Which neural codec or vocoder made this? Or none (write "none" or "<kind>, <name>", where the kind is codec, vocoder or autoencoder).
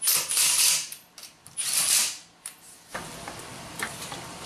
vocoder, BigVGAN v2